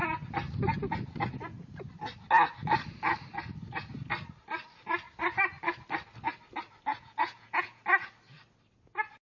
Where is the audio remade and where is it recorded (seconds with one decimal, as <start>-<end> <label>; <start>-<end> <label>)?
0.0-6.9 recorded; 6.9-7.8 remade; 7.8-9.3 recorded